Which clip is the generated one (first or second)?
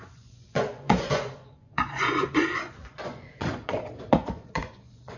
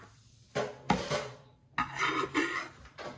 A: first